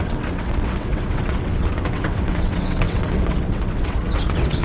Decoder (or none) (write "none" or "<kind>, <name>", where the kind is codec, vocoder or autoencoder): vocoder, WaveNeXt